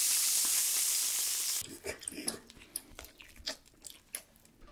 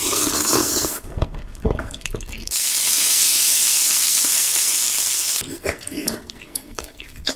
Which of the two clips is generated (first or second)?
second